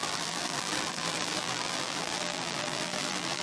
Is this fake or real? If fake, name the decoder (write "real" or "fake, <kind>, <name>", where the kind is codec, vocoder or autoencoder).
fake, vocoder, BigVGAN v2